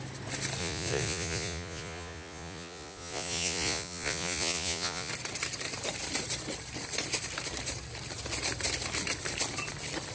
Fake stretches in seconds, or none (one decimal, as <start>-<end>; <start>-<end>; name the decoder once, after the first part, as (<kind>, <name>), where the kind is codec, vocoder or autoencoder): 0.6-5.1 (vocoder, Vocos)